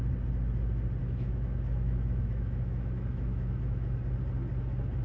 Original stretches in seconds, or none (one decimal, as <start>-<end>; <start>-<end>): 0.0-1.0; 4.0-5.0